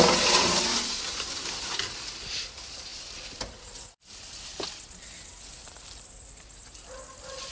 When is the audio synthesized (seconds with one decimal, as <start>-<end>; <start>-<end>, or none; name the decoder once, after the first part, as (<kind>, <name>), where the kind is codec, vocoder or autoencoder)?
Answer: none

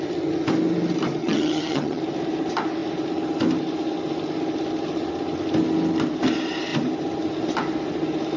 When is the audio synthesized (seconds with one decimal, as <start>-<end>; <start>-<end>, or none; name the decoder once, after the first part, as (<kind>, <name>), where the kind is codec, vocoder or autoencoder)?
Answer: 1.2-2.0 (vocoder, HiFi-GAN)

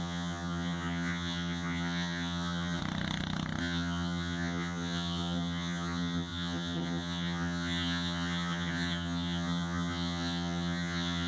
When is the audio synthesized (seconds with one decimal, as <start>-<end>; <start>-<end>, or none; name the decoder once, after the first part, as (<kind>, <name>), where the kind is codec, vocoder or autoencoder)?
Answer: 0.0-2.8 (vocoder, HiFi-GAN); 3.6-11.3

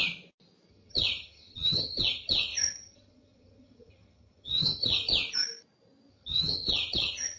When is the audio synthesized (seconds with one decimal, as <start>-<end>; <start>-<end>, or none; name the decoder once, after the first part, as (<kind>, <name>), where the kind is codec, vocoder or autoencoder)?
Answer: 0.7-5.1 (vocoder, HiFi-GAN); 6.1-7.4